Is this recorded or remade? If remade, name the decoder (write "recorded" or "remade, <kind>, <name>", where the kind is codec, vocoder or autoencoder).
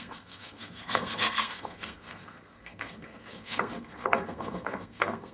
remade, codec, SNAC